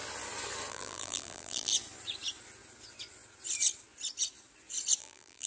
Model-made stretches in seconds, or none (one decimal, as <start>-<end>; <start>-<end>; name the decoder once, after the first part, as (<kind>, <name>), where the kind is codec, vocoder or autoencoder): 0.7-1.7 (vocoder, BigVGAN v2); 5.0-5.5